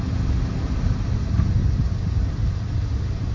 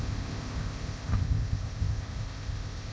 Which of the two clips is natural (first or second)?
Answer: first